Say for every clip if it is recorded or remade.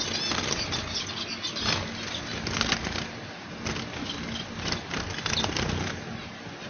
recorded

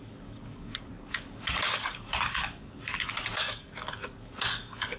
remade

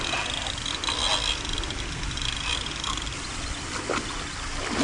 recorded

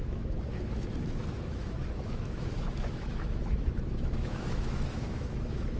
remade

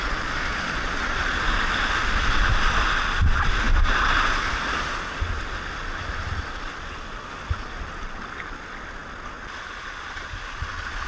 recorded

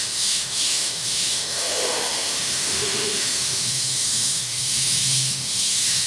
remade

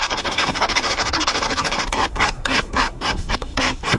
remade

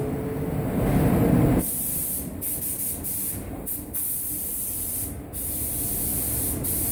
recorded